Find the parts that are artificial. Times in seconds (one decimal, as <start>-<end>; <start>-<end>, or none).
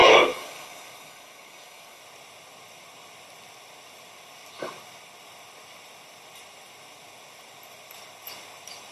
0.0-2.0